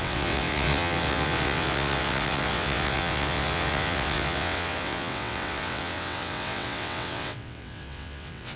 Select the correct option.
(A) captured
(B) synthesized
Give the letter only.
B